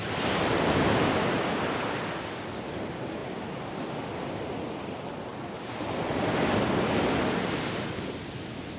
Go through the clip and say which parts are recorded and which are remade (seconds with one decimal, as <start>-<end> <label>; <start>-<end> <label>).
0.0-1.2 remade; 1.2-3.2 recorded; 3.2-3.7 remade; 3.7-8.8 recorded